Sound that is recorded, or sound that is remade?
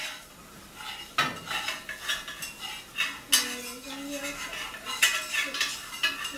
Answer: recorded